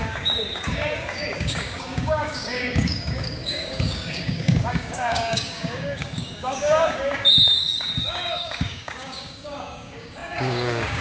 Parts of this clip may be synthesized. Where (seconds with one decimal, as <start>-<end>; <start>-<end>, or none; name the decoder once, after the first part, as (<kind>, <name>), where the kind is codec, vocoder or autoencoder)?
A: 0.0-11.0 (codec, DAC)